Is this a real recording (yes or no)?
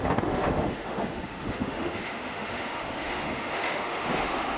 no